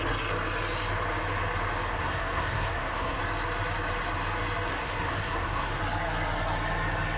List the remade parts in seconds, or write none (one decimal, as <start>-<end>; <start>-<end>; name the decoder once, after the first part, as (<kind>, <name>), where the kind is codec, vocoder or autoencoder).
1.9-3.2 (codec, SNAC); 4.7-5.8